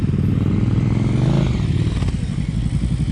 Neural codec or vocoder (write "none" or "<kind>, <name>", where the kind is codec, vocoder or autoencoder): none